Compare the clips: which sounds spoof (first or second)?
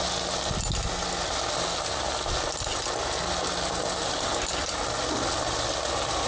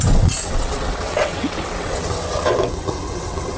second